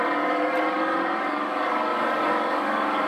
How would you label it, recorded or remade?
remade